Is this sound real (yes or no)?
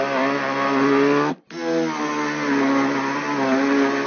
yes